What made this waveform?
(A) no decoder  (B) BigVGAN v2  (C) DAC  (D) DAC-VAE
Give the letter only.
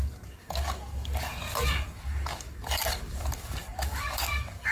C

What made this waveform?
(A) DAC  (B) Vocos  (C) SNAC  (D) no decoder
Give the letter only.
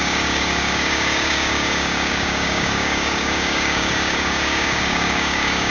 A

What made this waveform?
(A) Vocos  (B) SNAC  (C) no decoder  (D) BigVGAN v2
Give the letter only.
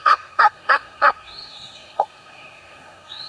B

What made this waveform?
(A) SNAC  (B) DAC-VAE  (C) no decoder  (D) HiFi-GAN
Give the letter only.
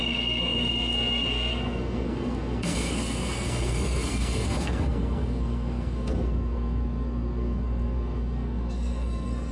A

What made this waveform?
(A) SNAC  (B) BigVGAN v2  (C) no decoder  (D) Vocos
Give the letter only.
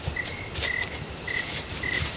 C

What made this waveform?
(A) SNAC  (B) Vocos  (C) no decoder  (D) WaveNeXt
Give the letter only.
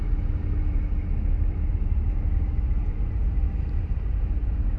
C